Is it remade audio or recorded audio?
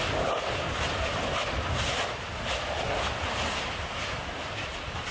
recorded